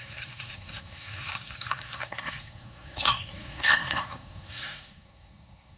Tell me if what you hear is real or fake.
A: fake